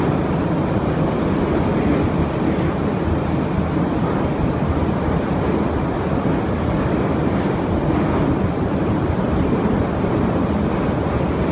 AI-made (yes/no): no